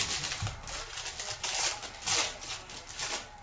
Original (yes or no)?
yes